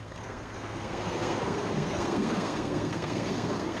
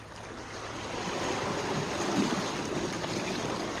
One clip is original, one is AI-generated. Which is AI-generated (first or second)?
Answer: first